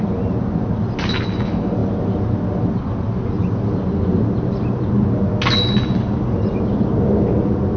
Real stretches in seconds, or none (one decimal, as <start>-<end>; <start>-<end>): 0.0-7.8

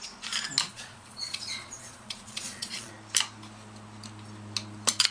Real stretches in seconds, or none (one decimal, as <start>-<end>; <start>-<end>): 0.0-0.7; 2.9-5.1

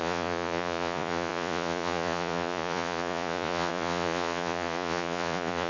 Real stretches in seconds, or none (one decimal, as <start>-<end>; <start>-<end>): none

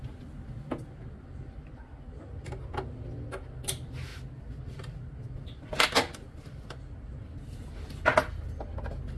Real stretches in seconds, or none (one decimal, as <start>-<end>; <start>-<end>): 0.0-9.2

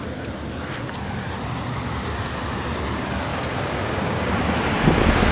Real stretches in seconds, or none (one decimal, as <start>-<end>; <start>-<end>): 0.0-3.3; 4.4-5.3

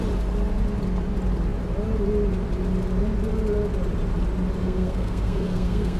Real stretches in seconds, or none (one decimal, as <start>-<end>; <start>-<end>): 0.0-4.6

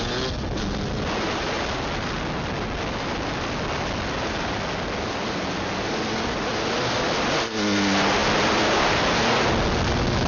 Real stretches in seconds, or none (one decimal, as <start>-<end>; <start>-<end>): 0.0-10.3

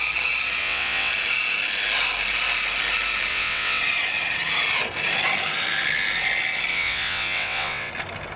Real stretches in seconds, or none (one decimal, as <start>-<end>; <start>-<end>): 0.0-0.6; 1.1-3.3; 3.8-6.7; 7.9-8.4